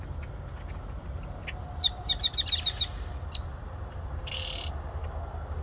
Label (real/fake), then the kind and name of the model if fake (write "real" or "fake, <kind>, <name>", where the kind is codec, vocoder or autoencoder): real